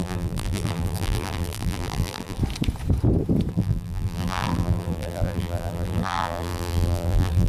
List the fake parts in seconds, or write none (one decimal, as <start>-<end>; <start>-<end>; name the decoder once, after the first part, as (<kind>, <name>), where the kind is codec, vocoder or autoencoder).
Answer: 0.0-2.4 (vocoder, BigVGAN v2); 3.5-7.5